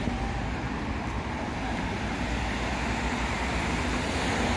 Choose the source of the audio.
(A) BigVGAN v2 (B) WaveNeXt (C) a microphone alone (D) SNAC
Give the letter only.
C